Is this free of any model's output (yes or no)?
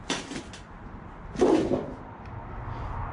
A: yes